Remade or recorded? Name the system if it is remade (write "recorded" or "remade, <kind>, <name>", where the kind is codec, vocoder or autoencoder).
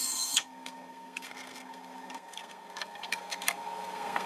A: remade, codec, SNAC